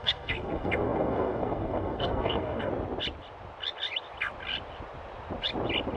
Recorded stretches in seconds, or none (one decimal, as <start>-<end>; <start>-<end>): 2.7-6.0